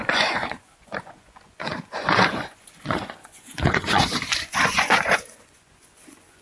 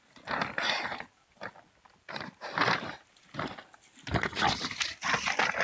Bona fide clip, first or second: second